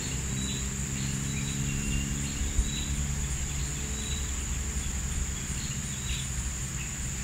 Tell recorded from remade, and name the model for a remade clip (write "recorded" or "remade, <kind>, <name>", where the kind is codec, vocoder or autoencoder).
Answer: recorded